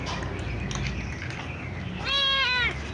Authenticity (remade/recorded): recorded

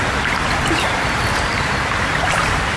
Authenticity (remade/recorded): remade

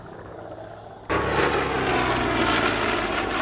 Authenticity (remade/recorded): recorded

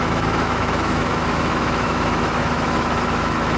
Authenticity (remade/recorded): remade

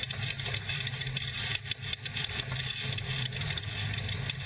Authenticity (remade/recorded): recorded